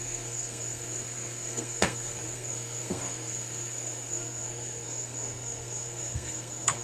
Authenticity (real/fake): fake